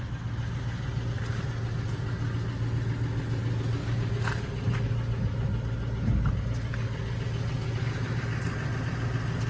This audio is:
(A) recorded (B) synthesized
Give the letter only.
A